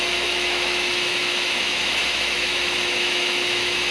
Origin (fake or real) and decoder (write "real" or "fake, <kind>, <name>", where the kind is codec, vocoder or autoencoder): fake, autoencoder, DAC-VAE